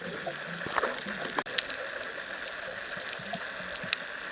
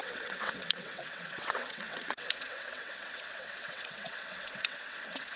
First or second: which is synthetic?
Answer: second